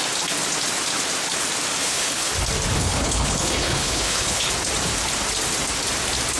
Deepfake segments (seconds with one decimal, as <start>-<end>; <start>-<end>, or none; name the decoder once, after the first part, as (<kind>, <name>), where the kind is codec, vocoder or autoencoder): 1.8-2.3 (codec, HILCodec); 2.8-4.5